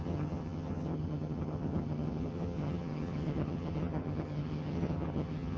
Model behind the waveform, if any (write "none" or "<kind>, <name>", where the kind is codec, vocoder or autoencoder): vocoder, HiFi-GAN